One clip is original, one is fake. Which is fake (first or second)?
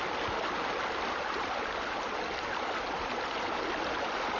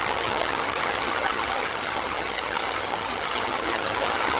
second